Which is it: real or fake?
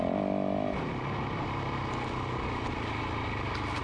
real